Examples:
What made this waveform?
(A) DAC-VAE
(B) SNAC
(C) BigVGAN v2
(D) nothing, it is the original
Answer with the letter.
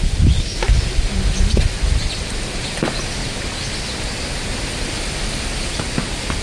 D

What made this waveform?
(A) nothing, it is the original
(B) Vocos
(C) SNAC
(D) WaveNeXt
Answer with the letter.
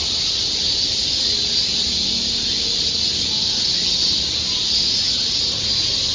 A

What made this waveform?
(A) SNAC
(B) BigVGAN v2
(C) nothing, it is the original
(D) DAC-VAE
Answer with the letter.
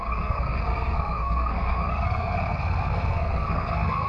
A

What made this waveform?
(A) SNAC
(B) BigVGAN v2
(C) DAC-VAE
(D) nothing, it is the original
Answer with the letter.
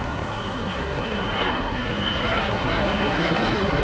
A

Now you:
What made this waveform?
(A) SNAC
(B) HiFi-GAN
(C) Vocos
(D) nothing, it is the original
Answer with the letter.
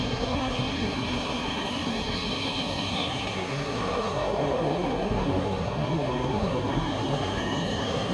A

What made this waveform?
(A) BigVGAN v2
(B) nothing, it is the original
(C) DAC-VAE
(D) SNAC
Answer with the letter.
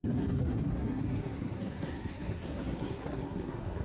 D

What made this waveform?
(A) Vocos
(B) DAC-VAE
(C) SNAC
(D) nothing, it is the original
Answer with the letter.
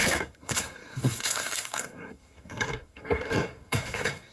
C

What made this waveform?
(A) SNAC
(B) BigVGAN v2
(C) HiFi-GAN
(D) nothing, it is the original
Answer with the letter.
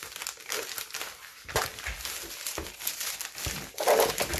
D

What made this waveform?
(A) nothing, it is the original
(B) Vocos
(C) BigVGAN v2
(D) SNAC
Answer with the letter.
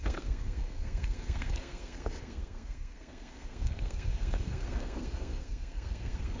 D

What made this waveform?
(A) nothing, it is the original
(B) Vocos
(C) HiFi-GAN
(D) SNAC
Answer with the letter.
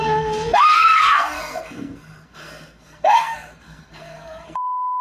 D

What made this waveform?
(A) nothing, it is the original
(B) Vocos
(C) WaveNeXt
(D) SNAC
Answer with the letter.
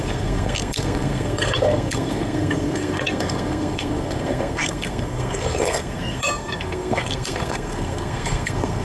D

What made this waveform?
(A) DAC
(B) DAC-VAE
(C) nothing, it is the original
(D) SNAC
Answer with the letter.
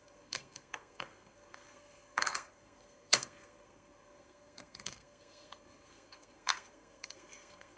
D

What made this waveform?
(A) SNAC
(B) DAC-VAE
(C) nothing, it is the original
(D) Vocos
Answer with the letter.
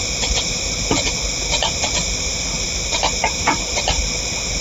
C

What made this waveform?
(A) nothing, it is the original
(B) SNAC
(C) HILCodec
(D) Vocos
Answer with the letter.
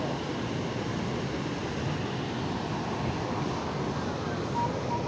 A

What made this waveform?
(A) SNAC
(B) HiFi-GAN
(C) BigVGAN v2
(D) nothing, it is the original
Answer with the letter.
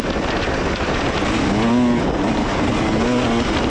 D